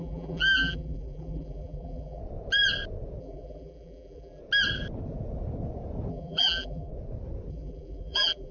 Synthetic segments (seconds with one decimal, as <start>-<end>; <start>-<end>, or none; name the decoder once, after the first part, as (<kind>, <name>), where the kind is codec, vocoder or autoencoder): 0.0-2.2 (vocoder, BigVGAN v2); 3.2-4.4; 6.1-6.9; 7.5-8.5